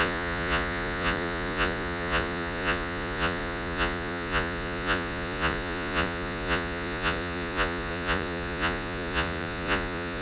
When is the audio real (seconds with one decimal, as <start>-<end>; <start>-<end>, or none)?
none